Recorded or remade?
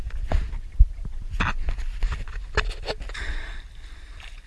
recorded